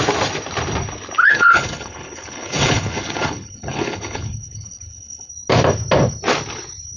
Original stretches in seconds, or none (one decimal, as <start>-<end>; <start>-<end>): 0.0-1.2; 5.3-7.0